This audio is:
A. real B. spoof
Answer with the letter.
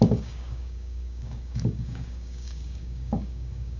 B